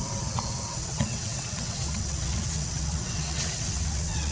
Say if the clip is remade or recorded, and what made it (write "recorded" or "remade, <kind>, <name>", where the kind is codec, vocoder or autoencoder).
remade, vocoder, WaveNeXt